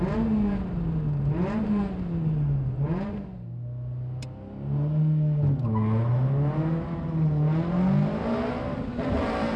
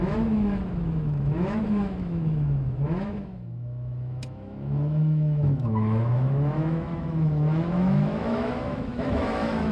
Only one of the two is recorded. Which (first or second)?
first